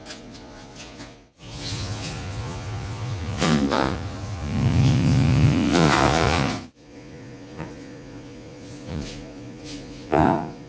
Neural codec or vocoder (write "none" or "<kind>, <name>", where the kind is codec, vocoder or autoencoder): vocoder, Vocos